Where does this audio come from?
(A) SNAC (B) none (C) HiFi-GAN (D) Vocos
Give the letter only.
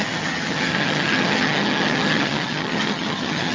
C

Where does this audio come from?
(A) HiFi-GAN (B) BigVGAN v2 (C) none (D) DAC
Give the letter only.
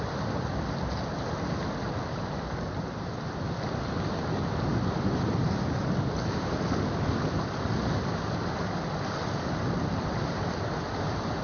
C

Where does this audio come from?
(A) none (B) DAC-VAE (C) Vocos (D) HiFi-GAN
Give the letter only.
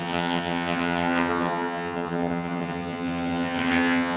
D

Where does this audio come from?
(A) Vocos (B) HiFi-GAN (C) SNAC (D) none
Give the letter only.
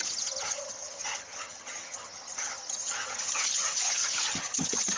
B